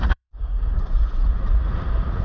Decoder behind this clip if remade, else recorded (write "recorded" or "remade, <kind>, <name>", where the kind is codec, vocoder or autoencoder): remade, vocoder, Vocos